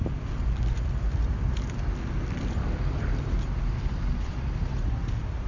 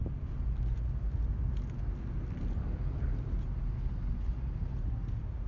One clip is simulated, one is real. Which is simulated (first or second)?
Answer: first